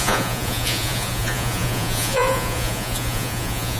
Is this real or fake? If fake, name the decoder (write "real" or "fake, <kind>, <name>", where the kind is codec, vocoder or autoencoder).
fake, vocoder, Vocos